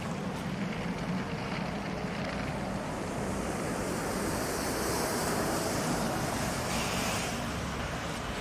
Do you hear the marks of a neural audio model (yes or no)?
yes